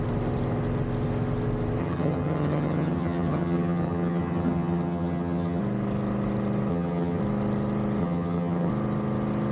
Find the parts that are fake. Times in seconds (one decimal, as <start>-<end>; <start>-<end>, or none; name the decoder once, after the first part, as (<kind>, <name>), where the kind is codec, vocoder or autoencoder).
1.8-5.6 (vocoder, HiFi-GAN); 6.7-7.2; 8.0-8.7